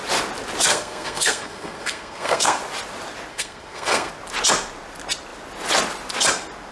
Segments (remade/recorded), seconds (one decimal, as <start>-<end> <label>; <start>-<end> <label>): 0.0-0.7 recorded; 0.7-2.6 remade; 2.6-3.3 recorded; 3.3-4.1 remade; 4.1-6.7 recorded